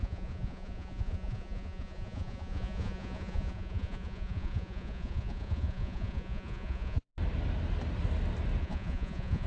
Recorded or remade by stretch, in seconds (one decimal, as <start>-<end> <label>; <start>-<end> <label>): 0.0-7.1 remade; 7.1-8.6 recorded; 8.6-9.5 remade